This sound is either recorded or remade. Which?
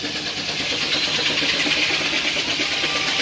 recorded